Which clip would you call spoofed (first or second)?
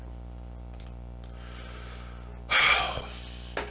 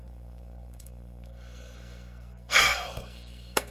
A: second